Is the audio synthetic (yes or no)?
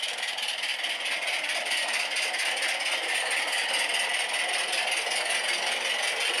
no